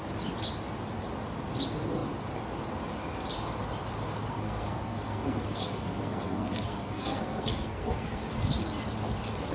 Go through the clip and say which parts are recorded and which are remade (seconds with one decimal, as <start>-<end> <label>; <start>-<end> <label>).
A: 0.0-4.1 recorded; 4.1-8.2 remade; 8.2-9.5 recorded